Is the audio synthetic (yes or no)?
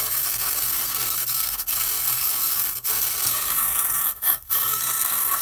yes